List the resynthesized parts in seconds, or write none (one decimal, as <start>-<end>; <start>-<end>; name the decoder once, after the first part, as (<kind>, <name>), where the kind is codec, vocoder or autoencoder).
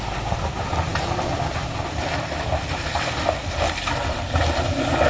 none